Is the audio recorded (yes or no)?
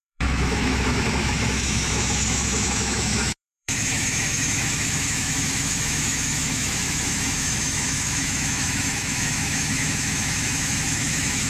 no